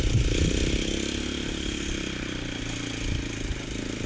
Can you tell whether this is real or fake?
real